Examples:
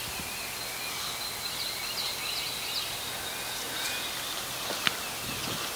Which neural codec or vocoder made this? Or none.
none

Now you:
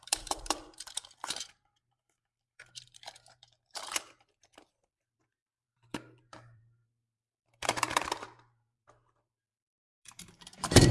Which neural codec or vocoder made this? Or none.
vocoder, BigVGAN v2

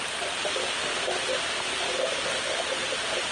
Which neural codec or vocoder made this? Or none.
vocoder, BigVGAN v2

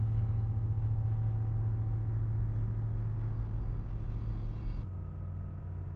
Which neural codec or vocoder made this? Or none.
none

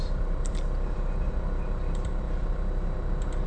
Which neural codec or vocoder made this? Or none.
vocoder, BigVGAN v2